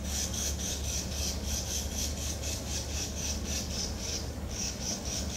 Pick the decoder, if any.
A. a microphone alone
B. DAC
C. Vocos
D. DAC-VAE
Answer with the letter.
B